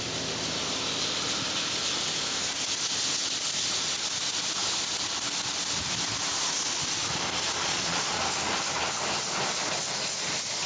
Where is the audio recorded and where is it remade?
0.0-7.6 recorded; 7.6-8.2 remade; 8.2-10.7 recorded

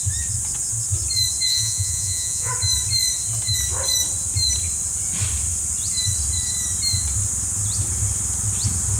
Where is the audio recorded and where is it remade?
0.0-1.5 recorded; 1.5-2.5 remade; 2.5-9.0 recorded

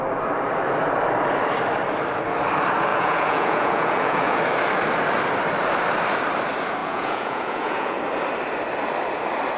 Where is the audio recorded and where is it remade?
0.0-2.9 recorded; 2.9-4.4 remade; 4.4-6.8 recorded; 6.8-8.0 remade; 8.0-9.6 recorded

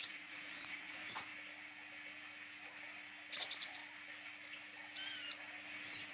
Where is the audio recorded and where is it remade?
0.0-1.3 remade; 1.3-3.4 recorded; 3.4-3.8 remade; 3.8-6.1 recorded

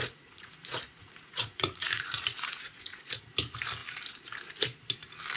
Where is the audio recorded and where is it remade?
0.0-3.2 remade; 3.2-5.4 recorded

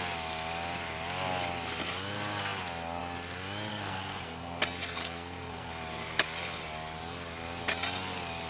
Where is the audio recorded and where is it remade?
0.0-3.7 recorded; 3.7-4.6 remade; 4.6-5.0 recorded; 5.0-5.7 remade; 5.7-8.5 recorded